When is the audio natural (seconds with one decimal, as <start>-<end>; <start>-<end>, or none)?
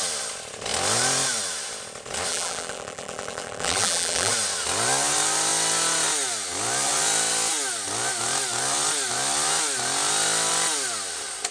0.0-2.3; 4.3-11.5